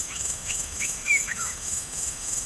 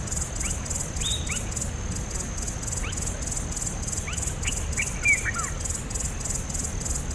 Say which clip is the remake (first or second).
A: first